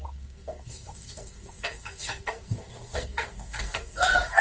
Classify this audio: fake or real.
fake